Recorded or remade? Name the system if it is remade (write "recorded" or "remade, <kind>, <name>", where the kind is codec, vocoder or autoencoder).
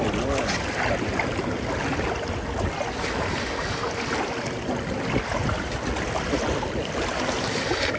recorded